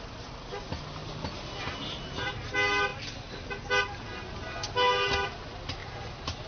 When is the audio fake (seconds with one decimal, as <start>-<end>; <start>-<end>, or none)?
5.8-6.5